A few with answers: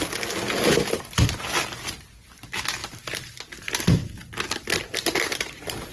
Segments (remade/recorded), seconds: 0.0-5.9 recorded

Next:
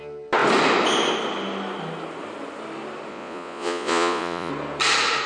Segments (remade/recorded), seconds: 0.0-3.1 recorded; 3.1-4.5 remade; 4.5-5.3 recorded

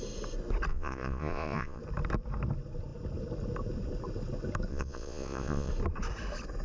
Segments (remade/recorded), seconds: 0.0-0.7 recorded; 0.7-1.8 remade; 1.8-4.7 recorded; 4.7-5.7 remade; 5.7-6.6 recorded

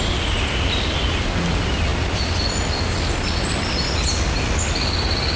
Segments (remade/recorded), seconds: 0.0-5.4 recorded